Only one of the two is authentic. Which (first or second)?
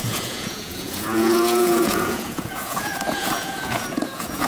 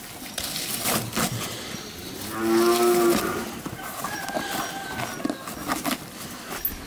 second